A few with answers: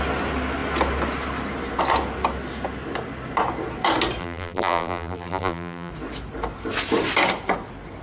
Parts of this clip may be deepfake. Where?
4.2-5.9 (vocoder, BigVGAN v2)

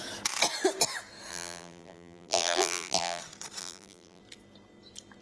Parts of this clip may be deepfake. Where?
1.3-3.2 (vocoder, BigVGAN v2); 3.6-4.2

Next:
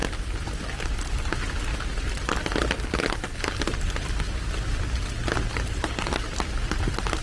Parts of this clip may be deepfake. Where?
none

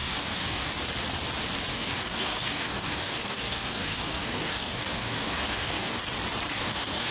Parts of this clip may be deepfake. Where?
0.0-0.7 (codec, DAC); 1.7-6.0; 6.5-7.1